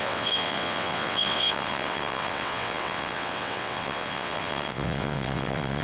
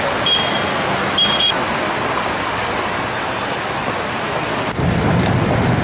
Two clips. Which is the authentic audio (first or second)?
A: second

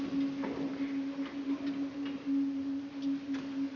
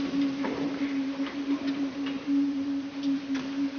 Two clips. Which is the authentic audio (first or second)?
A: first